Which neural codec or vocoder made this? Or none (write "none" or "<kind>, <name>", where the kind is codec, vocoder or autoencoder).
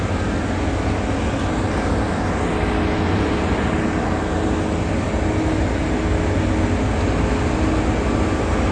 none